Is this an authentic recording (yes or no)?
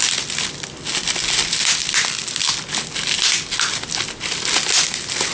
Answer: yes